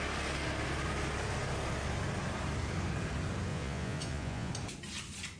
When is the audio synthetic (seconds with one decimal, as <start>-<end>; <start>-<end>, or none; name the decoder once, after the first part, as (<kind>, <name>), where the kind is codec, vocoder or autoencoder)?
3.5-4.5 (vocoder, Vocos)

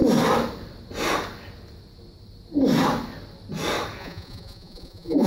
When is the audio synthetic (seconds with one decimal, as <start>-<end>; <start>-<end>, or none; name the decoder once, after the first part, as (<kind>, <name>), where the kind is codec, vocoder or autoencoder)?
4.0-5.3 (vocoder, Vocos)

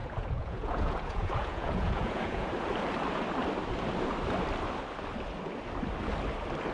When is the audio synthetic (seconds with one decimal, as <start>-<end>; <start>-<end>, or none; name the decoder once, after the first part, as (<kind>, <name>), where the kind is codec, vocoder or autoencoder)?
0.0-2.5 (vocoder, Vocos)

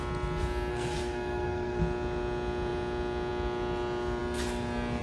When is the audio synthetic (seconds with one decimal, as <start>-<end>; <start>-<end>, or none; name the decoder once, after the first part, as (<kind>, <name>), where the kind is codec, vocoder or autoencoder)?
0.7-1.8 (codec, SNAC)

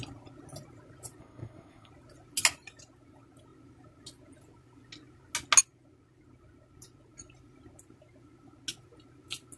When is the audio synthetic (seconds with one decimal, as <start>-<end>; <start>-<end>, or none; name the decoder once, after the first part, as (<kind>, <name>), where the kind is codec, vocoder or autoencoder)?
1.2-1.9 (codec, SNAC)

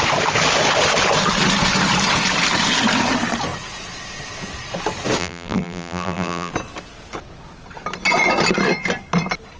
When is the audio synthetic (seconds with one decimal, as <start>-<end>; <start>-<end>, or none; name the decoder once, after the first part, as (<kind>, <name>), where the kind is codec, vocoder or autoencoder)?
5.2-6.5 (vocoder, BigVGAN v2)

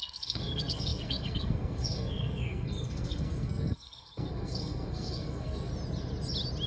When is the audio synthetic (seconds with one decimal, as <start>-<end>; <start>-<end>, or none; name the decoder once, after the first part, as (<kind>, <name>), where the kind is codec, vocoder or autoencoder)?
0.0-5.7 (codec, SNAC)